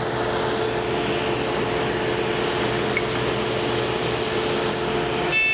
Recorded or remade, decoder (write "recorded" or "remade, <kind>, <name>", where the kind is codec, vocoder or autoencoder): recorded